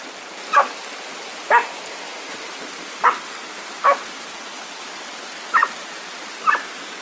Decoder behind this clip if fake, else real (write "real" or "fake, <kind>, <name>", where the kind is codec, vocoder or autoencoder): real